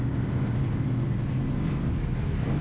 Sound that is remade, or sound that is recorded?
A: recorded